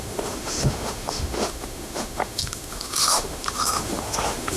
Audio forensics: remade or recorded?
remade